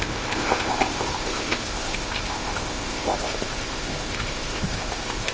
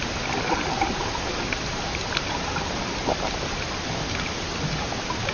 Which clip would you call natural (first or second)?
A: second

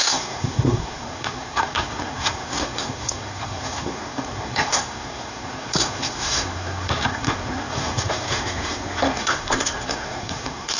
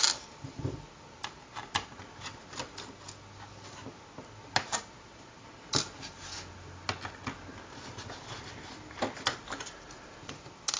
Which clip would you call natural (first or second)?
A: second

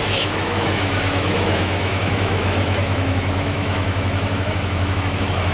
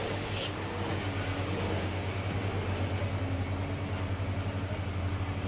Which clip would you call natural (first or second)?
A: second